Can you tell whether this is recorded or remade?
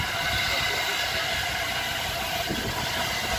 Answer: recorded